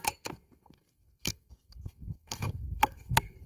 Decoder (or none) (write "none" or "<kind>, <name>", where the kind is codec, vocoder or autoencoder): codec, SNAC